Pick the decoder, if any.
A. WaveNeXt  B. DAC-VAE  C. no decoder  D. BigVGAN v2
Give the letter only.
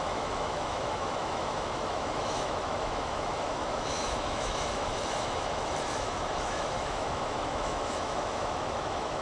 B